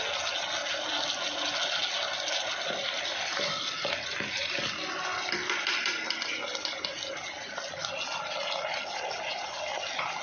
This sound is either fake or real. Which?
real